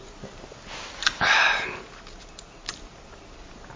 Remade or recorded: recorded